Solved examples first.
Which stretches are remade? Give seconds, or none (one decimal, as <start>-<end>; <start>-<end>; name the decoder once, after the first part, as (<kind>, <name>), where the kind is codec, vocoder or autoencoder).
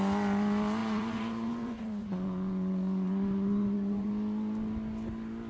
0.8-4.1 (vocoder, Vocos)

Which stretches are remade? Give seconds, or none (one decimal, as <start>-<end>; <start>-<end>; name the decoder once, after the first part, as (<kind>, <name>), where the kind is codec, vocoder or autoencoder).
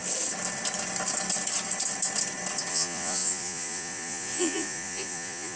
2.7-5.6 (vocoder, Vocos)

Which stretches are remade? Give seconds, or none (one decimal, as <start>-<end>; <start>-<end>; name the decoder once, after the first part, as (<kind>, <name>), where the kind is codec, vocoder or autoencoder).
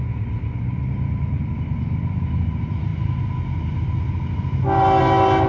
none